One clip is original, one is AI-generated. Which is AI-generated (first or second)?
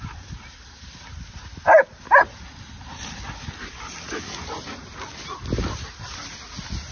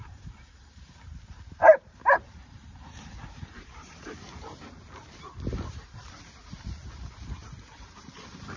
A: second